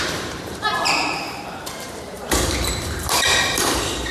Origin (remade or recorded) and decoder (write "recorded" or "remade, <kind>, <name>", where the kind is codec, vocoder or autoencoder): remade, vocoder, BigVGAN v2